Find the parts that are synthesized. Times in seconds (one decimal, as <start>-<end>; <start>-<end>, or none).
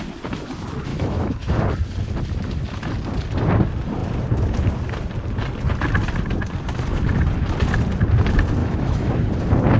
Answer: 0.9-1.6; 8.6-9.1